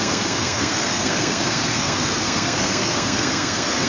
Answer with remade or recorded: remade